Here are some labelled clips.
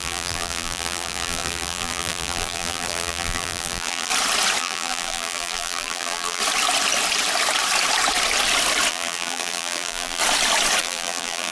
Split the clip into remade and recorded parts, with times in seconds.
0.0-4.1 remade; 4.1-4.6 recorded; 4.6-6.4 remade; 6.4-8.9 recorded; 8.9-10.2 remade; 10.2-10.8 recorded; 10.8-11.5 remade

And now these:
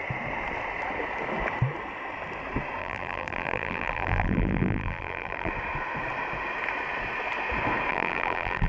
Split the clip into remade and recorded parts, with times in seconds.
0.0-2.8 recorded; 2.8-5.5 remade; 5.5-7.9 recorded; 7.9-8.7 remade

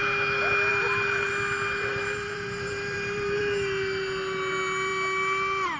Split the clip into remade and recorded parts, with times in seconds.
0.0-0.7 recorded; 0.7-1.3 remade; 1.3-1.9 recorded; 1.9-3.4 remade; 3.4-5.8 recorded

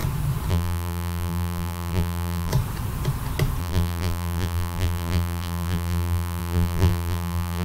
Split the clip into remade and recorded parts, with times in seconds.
0.0-0.5 recorded; 0.5-2.5 remade; 2.5-3.6 recorded; 3.6-7.6 remade

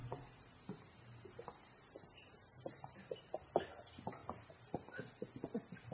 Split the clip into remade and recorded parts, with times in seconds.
0.0-3.5 remade; 3.5-4.2 recorded; 4.2-5.0 remade; 5.0-5.9 recorded